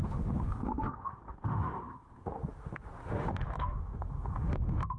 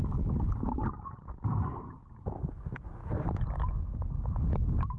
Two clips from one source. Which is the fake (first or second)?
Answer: first